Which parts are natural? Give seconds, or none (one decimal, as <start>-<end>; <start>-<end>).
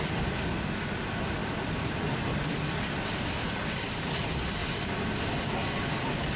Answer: 0.0-1.4; 3.9-6.4